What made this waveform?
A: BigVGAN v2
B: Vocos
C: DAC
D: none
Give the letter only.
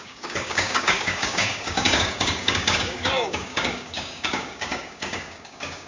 C